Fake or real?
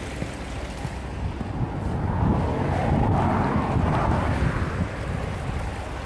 real